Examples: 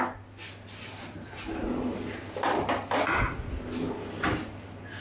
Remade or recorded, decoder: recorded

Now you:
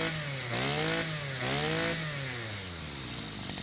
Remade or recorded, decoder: recorded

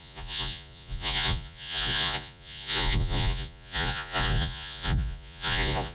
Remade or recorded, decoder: remade, vocoder, Vocos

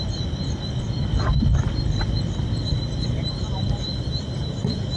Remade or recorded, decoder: recorded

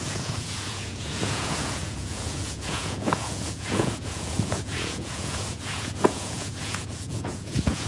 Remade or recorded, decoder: remade, vocoder, Vocos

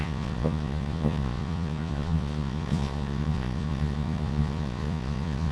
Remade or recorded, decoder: remade, vocoder, Vocos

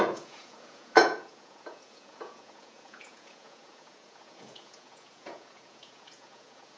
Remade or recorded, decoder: remade, vocoder, Vocos